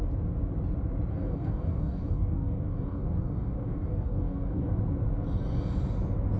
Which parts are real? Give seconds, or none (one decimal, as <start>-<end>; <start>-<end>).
0.0-1.1; 4.7-6.4